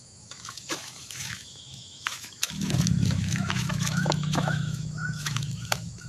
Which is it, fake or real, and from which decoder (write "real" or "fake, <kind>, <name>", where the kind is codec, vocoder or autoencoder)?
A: fake, autoencoder, DAC-VAE